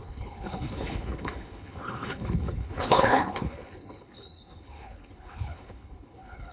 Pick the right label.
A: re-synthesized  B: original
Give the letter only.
A